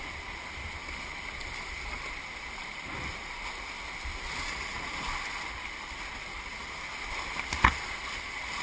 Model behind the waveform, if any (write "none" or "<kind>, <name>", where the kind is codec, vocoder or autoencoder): none